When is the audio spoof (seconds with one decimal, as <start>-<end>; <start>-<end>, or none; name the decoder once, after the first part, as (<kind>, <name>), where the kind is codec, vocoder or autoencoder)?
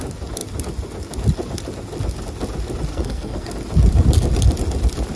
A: 2.9-3.5 (codec, SNAC)